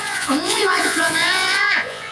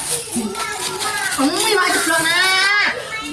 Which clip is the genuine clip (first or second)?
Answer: second